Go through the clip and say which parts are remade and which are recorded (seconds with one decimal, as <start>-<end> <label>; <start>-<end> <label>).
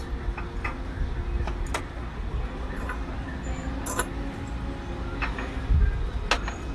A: 0.0-6.7 recorded